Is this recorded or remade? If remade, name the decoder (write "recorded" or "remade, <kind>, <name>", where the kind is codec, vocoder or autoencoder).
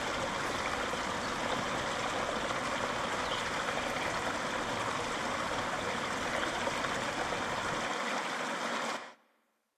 recorded